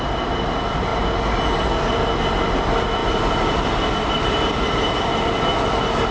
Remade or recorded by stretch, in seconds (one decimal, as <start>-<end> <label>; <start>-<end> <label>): 0.0-6.1 recorded

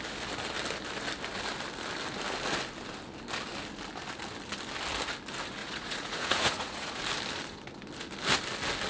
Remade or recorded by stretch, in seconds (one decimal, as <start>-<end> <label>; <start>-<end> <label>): 0.0-5.6 recorded; 5.6-7.0 remade; 7.0-8.9 recorded

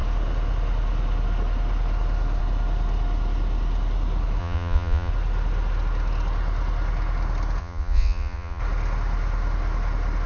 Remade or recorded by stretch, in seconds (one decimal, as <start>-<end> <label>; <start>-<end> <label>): 0.0-4.4 recorded; 4.4-5.1 remade; 5.1-7.6 recorded; 7.6-8.6 remade; 8.6-10.3 recorded

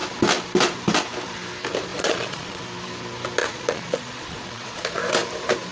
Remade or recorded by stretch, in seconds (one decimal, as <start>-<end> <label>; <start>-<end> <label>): 0.0-1.9 recorded; 1.9-2.6 remade; 2.6-3.4 recorded; 3.4-5.0 remade; 5.0-5.7 recorded